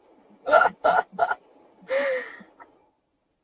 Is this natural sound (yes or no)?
yes